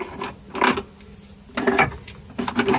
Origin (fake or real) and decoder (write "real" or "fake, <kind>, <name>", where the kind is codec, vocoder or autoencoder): real